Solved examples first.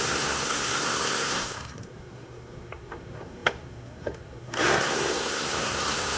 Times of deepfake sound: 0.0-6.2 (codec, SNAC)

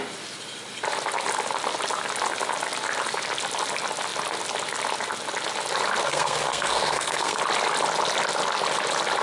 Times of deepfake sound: 6.0-7.4 (codec, SNAC)

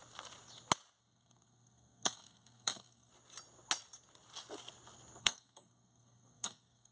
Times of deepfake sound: 1.0-3.1 (codec, SNAC); 5.2-6.9

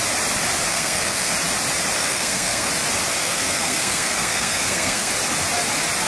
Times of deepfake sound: 0.7-1.3 (codec, SNAC); 2.0-2.7; 3.2-5.1

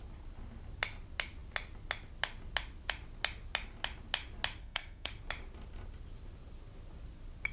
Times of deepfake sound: 4.6-5.1 (codec, SNAC)

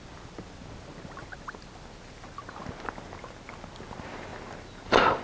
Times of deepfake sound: none